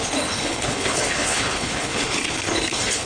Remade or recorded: remade